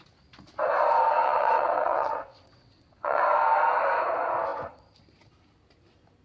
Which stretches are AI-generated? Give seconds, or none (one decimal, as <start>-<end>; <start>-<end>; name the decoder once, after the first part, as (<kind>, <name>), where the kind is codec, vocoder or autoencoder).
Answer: 1.2-3.2 (vocoder, WaveNeXt)